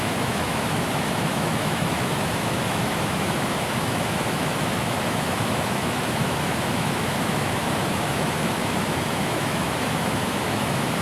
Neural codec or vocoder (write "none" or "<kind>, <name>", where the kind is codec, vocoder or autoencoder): autoencoder, DAC-VAE